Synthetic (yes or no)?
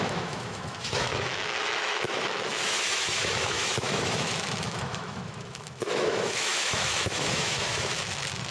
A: yes